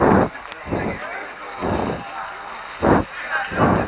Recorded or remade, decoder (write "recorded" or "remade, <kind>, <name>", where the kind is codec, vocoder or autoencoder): recorded